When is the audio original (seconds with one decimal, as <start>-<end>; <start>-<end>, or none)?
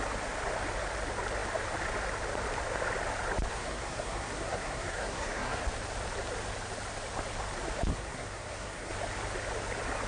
0.0-3.5; 5.6-7.9; 8.9-10.1